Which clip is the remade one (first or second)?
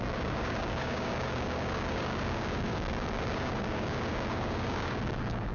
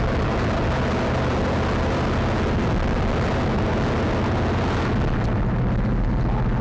first